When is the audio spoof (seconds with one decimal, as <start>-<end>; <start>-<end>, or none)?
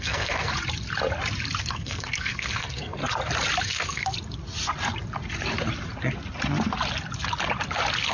0.0-0.5; 1.6-3.0; 3.6-4.0